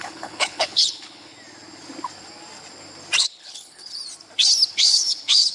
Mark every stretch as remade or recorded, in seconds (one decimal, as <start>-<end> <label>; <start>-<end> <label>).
0.0-1.3 remade; 1.3-3.2 recorded; 3.2-4.0 remade; 4.0-4.7 recorded; 4.7-5.5 remade